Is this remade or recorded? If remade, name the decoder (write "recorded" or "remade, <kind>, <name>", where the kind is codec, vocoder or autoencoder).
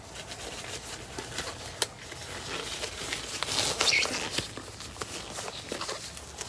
recorded